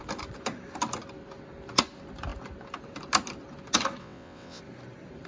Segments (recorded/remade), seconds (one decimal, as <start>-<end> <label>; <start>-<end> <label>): 0.0-4.0 recorded; 4.0-4.6 remade; 4.6-5.3 recorded